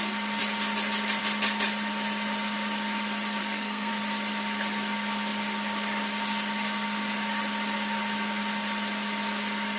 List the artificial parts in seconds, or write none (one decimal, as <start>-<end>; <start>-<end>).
3.4-3.9